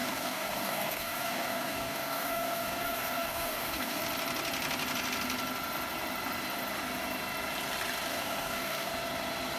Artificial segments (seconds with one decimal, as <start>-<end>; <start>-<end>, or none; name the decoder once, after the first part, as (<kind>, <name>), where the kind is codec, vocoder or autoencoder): 0.0-4.0 (codec, DAC); 8.1-8.9